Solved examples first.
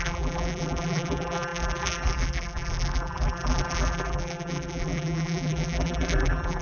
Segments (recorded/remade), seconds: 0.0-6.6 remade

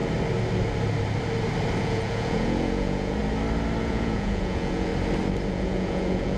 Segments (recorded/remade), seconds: 0.0-1.8 recorded; 1.8-3.2 remade; 3.2-3.8 recorded; 3.8-4.9 remade; 4.9-5.5 recorded; 5.5-6.4 remade

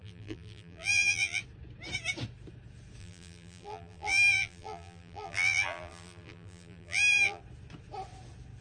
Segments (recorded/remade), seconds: 0.0-1.4 remade; 1.4-3.0 recorded; 3.0-7.4 remade; 7.4-8.6 recorded

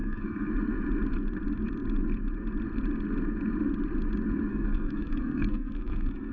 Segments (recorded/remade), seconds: 0.0-0.5 remade; 0.5-4.5 recorded; 4.5-6.3 remade

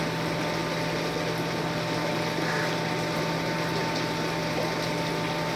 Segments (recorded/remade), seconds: 0.0-5.6 recorded

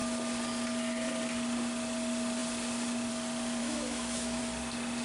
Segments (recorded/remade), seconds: 0.0-3.6 recorded; 3.6-4.4 remade; 4.4-5.0 recorded

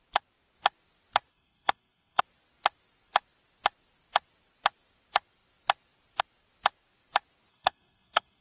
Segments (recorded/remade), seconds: 0.0-1.3 recorded; 1.3-2.2 remade; 2.2-7.5 recorded; 7.5-8.4 remade